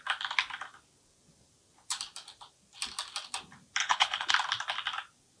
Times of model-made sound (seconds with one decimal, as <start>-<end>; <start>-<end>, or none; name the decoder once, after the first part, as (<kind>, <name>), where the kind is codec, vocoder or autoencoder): 3.8-4.3 (codec, HILCodec)